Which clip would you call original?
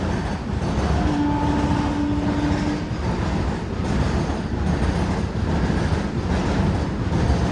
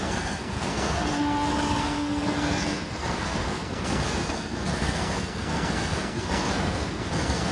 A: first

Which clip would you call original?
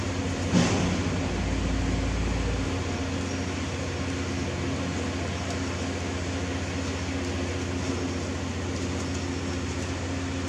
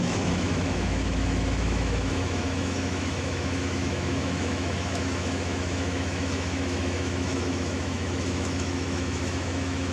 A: first